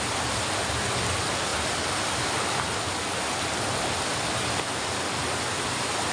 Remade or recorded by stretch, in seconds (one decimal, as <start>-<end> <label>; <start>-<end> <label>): 0.0-6.1 recorded